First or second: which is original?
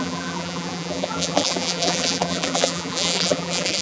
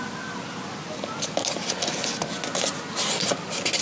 second